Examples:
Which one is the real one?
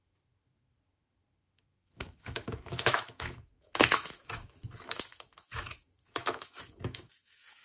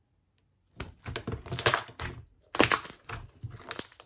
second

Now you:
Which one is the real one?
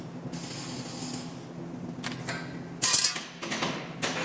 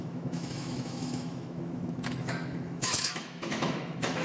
first